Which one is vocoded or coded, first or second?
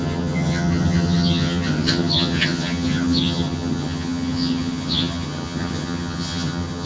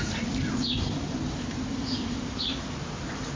first